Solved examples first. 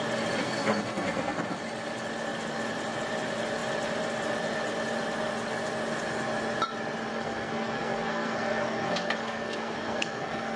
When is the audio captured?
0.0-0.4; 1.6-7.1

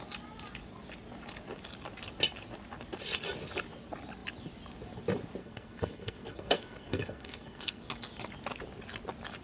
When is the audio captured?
0.0-5.4; 7.8-9.4

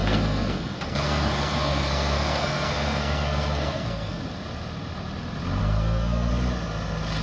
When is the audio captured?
4.2-5.6; 6.3-7.2

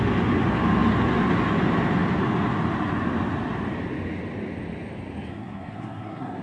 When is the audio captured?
0.0-5.3

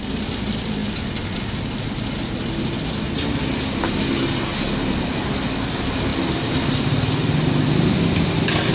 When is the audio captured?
0.0-8.7

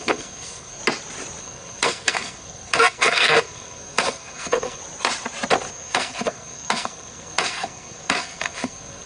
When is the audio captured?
0.8-1.4; 4.8-5.7

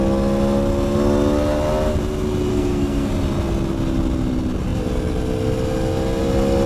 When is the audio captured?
0.0-2.5; 3.1-6.7